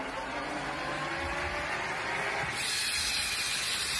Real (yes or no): yes